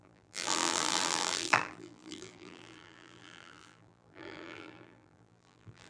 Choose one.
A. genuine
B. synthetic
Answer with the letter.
B